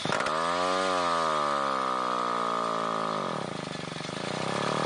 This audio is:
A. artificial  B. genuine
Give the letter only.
B